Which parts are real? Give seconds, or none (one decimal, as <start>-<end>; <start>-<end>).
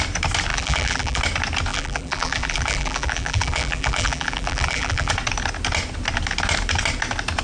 0.0-0.5; 1.2-1.7; 5.1-7.4